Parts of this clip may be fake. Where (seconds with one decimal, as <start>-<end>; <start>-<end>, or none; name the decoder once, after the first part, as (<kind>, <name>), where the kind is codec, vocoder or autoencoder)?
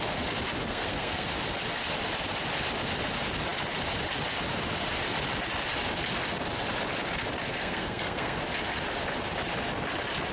0.7-1.3 (codec, SNAC); 7.5-8.4